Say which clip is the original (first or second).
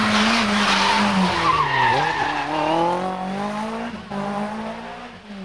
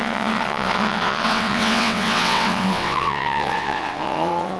first